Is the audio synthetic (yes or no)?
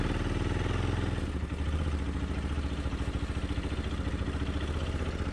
no